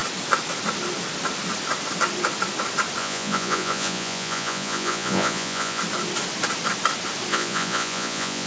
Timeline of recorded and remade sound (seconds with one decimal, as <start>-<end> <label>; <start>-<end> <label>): 0.0-3.0 recorded; 3.0-5.8 remade; 5.8-7.3 recorded; 7.3-8.5 remade

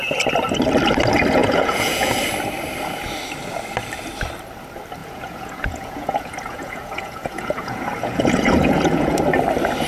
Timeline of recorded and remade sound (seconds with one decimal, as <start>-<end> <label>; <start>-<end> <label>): 0.0-1.4 recorded; 1.4-2.1 remade; 2.1-5.0 recorded; 5.0-9.2 remade; 9.2-9.9 recorded

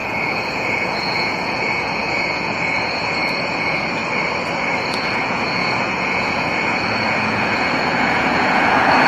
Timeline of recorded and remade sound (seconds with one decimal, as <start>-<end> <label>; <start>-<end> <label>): 0.0-4.0 remade; 4.0-4.9 recorded; 4.9-9.1 remade

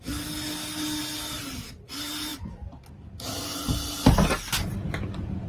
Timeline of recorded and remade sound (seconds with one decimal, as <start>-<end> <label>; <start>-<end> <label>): 0.0-5.5 recorded

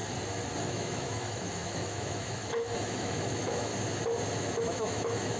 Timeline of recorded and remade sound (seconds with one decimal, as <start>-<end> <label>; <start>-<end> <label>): 0.0-0.6 recorded; 0.6-3.7 remade; 3.7-4.4 recorded; 4.4-5.4 remade

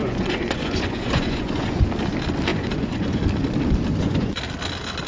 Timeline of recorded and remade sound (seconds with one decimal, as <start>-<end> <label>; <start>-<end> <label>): 0.0-1.8 remade; 1.8-2.5 recorded; 2.5-3.2 remade; 3.2-3.9 recorded; 3.9-4.4 remade; 4.4-5.1 recorded